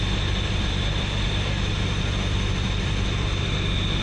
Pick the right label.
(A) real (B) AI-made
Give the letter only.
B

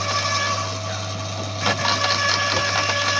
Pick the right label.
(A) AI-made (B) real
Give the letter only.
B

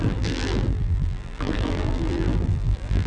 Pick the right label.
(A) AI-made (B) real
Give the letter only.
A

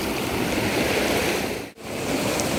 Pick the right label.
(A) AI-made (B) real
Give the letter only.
A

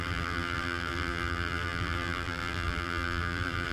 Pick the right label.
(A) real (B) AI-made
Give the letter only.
B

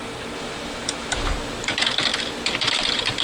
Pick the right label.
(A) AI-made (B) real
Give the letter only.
A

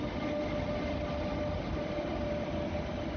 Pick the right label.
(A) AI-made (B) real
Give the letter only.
B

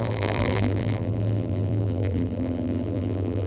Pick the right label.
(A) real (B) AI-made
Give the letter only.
B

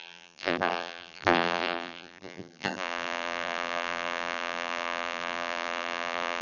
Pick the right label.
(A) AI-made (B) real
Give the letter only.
A